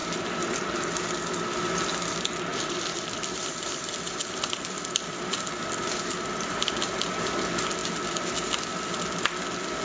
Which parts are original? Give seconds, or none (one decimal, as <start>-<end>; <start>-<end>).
1.1-2.5; 7.3-9.8